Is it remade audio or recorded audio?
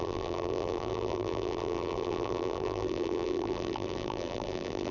remade